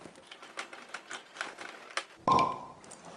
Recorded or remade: recorded